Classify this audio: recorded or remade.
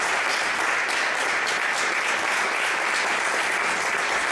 recorded